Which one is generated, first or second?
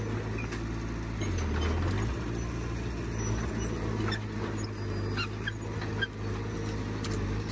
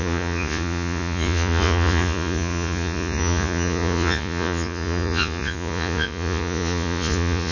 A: second